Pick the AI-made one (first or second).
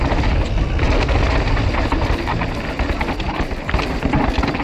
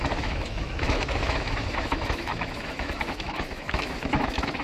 second